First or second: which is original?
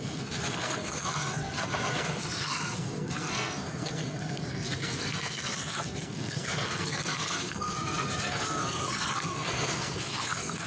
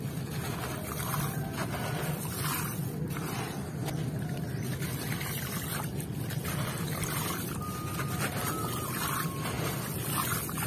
second